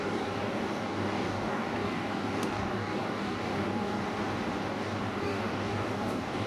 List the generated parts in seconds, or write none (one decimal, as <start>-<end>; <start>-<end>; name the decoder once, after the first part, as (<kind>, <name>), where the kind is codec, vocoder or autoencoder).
0.0-4.0 (codec, DAC); 4.7-6.5